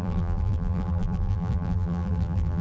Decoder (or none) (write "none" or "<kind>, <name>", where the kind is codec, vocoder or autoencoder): vocoder, BigVGAN v2